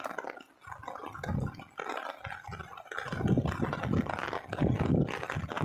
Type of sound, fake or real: real